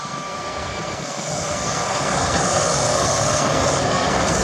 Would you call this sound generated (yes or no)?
yes